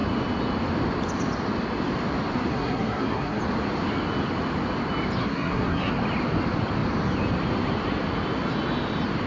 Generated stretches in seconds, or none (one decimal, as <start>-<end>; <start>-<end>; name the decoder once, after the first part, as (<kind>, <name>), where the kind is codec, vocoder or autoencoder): 2.5-3.4 (codec, SNAC); 5.2-5.9